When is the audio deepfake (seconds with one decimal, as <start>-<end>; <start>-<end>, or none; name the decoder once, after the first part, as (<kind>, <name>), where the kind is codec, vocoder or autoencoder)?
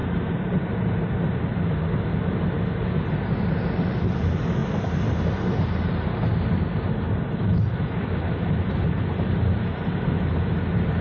none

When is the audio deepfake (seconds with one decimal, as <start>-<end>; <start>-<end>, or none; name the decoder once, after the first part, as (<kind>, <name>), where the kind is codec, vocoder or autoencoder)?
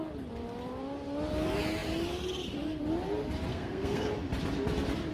3.5-4.1 (codec, SNAC)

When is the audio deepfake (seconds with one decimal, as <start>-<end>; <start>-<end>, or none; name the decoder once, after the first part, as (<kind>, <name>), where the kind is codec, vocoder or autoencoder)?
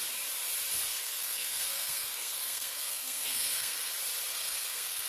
0.9-3.9 (codec, SNAC); 4.3-5.1